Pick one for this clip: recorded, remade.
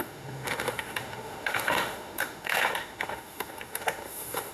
remade